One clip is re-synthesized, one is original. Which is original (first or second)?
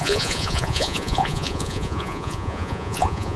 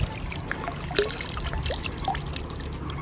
second